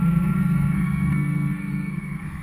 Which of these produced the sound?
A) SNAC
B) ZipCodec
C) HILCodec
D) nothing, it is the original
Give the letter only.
A